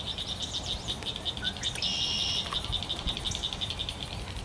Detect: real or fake real